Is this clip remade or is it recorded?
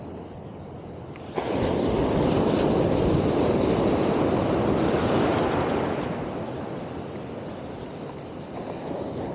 recorded